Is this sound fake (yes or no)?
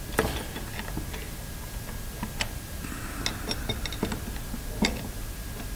no